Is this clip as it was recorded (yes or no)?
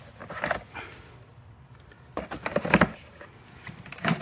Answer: no